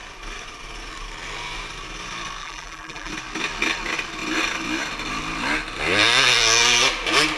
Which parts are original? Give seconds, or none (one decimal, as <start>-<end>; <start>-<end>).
0.0-2.4; 3.1-7.4